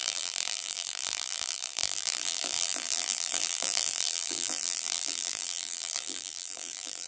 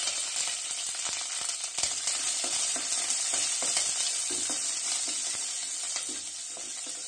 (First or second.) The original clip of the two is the second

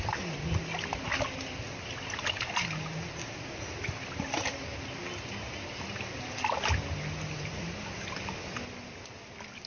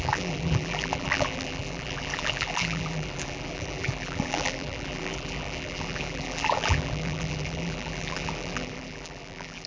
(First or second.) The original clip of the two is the first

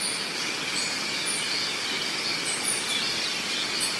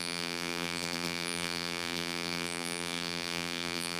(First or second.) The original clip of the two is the first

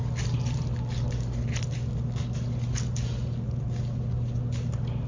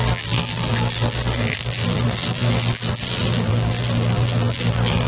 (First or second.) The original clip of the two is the first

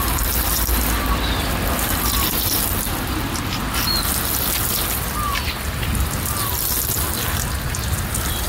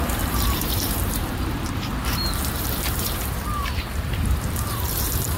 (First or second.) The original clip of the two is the first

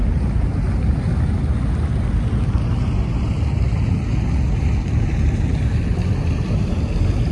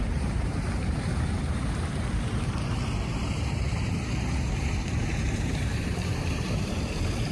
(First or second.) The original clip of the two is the first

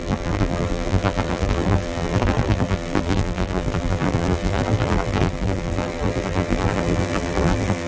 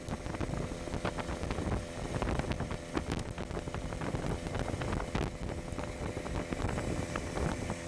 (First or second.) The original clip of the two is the second